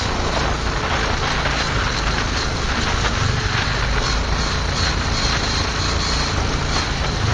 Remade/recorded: recorded